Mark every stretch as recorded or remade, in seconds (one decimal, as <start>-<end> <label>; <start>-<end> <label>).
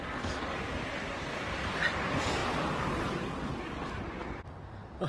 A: 0.0-5.1 recorded